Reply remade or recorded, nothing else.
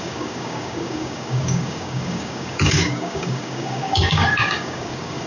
remade